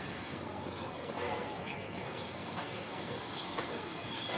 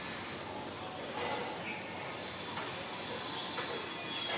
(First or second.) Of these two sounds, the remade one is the first